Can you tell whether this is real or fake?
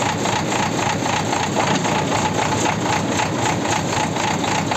real